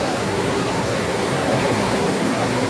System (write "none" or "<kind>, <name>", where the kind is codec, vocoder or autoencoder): codec, SNAC